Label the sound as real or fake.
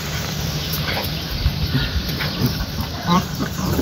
fake